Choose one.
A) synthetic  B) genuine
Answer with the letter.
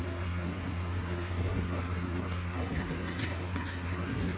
A